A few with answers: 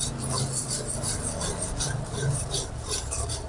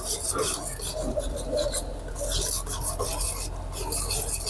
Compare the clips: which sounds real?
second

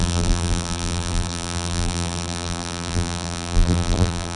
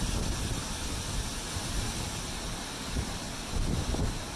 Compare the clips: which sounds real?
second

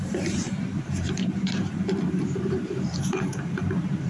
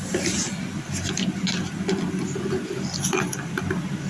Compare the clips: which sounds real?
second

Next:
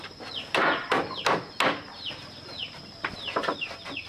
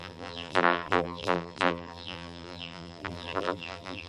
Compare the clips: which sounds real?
first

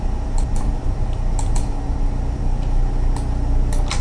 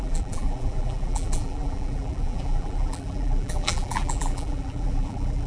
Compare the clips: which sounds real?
first